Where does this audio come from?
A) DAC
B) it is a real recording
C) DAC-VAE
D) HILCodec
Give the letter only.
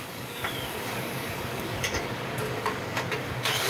A